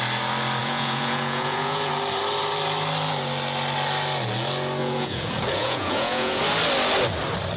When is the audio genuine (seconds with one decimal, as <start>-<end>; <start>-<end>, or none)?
0.0-0.6; 1.9-4.8; 6.4-7.6